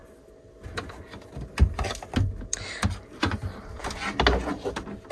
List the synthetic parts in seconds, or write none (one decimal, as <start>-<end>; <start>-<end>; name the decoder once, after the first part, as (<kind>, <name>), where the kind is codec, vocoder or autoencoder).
none